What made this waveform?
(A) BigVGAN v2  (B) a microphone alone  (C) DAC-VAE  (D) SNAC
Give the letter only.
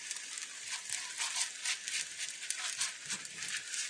B